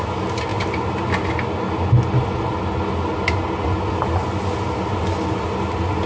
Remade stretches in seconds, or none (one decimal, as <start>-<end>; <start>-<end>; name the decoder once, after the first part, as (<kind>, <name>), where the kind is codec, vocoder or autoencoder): none